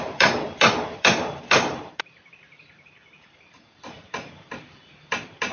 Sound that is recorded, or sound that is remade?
remade